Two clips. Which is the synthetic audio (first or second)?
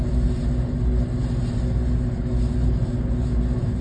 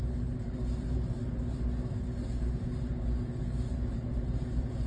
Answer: second